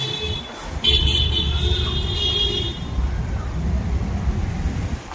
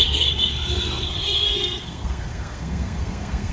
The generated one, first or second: second